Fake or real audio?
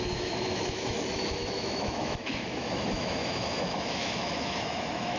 fake